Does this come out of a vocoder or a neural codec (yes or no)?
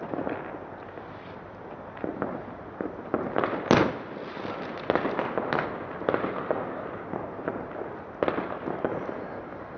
no